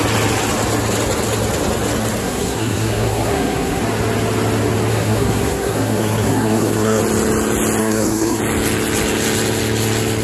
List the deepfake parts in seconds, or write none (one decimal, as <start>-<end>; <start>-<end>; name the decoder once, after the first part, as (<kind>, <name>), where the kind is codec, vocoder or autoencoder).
2.2-3.8 (codec, SNAC); 4.9-7.0; 7.8-8.4